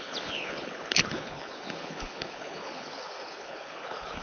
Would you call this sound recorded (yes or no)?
no